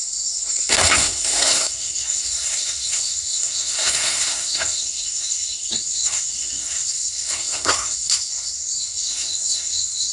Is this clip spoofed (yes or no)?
yes